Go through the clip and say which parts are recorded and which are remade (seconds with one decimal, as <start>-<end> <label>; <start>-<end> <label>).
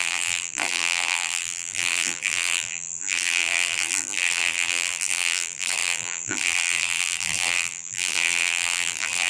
0.0-9.3 remade